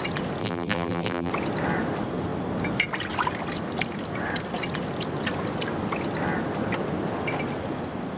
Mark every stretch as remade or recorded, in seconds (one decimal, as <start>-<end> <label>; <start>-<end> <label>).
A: 0.0-0.4 recorded; 0.4-1.3 remade; 1.3-8.2 recorded

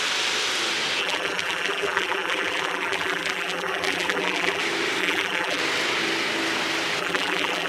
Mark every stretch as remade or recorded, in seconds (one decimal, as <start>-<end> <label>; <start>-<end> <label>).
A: 0.0-1.0 recorded; 1.0-4.6 remade; 4.6-5.0 recorded; 5.0-5.6 remade; 5.6-7.0 recorded; 7.0-7.7 remade

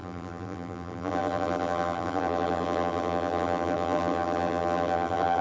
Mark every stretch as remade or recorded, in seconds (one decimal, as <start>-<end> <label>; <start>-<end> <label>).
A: 0.0-5.4 remade

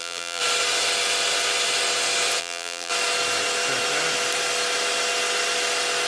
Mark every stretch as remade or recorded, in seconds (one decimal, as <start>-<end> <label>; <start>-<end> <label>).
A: 0.0-0.4 remade; 0.4-2.4 recorded; 2.4-2.9 remade; 2.9-6.1 recorded

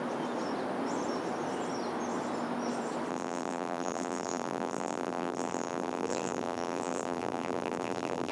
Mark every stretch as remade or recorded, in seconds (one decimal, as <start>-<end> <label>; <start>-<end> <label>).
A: 0.0-3.1 recorded; 3.1-8.3 remade

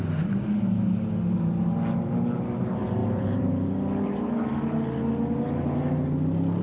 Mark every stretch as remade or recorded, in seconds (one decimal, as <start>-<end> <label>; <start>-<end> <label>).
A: 0.0-3.0 recorded; 3.0-4.3 remade; 4.3-6.6 recorded